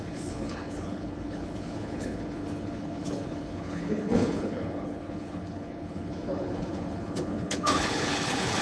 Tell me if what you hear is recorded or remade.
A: remade